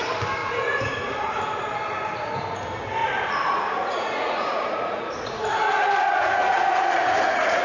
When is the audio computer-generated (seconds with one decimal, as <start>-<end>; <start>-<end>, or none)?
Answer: 0.4-1.4; 3.0-7.6